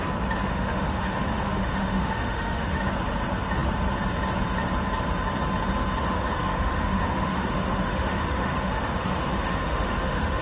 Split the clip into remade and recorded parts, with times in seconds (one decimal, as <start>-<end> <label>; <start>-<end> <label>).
0.0-0.5 recorded; 0.5-2.8 remade; 2.8-6.1 recorded; 6.1-10.4 remade